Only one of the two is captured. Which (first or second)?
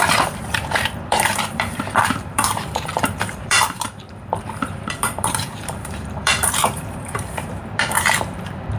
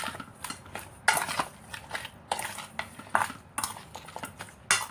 second